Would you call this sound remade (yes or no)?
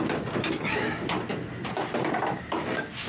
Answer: no